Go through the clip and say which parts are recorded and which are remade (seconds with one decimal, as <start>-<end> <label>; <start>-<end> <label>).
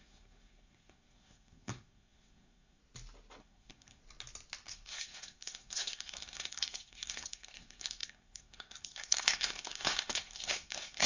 0.0-2.8 remade; 2.8-3.4 recorded; 3.4-4.0 remade; 4.0-4.7 recorded; 4.7-11.1 remade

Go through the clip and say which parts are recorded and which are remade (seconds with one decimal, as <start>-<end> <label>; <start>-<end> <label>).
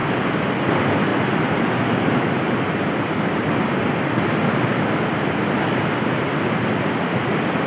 0.0-0.5 recorded; 0.5-7.7 remade